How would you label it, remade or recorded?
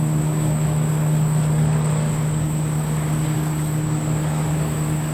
remade